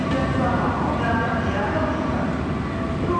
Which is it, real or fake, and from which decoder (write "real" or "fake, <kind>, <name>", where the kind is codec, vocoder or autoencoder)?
real